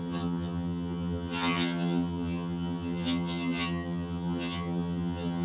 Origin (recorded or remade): remade